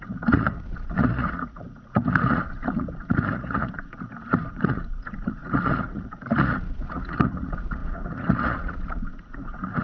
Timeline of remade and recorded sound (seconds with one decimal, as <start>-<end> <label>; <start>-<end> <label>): 0.0-9.8 remade